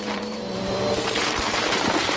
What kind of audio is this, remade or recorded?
remade